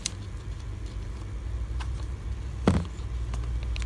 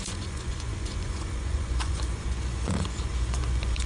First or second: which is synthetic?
second